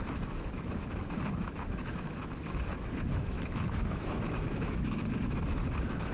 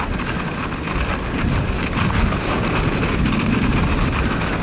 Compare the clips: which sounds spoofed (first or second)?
first